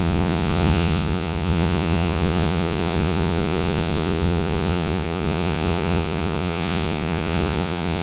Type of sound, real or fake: fake